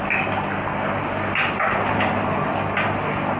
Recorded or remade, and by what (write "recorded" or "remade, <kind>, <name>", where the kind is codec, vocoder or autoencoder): recorded